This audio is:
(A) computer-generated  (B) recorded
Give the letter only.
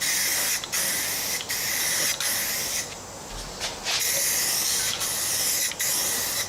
B